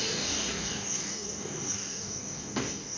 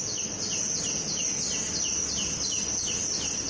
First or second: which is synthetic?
first